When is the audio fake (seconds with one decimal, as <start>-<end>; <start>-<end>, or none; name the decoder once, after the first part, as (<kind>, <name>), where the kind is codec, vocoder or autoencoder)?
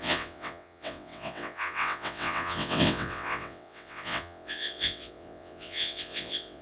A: 0.0-6.6 (vocoder, WaveNeXt)